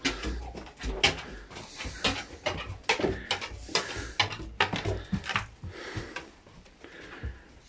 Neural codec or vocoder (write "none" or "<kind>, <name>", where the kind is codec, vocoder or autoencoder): none